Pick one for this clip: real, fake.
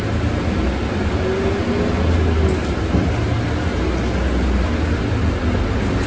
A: real